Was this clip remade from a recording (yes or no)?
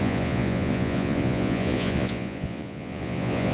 yes